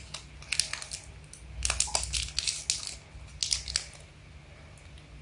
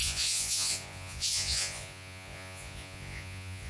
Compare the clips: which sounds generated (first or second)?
second